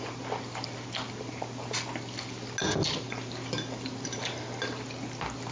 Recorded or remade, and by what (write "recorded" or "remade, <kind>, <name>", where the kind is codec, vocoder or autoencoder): recorded